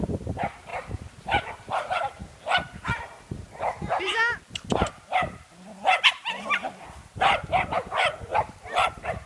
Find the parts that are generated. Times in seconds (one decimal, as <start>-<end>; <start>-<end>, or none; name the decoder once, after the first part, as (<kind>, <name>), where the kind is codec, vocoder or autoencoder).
0.0-2.2 (vocoder, BigVGAN v2); 6.8-8.3; 8.9-9.3